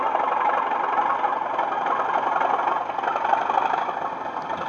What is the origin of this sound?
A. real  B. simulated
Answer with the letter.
A